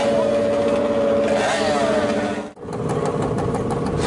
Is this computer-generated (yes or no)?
no